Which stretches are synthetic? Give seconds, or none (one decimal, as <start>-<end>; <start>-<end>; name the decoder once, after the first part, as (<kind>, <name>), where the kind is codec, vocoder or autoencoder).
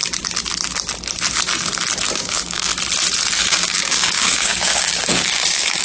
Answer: 2.1-2.7 (codec, DAC); 3.4-5.8